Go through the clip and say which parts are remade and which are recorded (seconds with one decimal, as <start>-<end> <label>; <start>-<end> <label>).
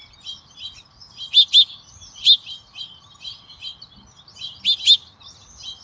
0.0-5.8 recorded